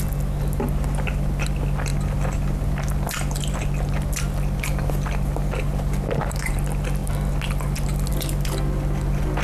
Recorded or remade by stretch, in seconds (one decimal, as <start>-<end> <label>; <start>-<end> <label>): 0.0-9.4 recorded